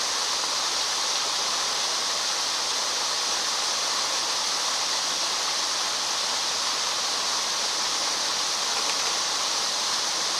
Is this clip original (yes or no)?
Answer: yes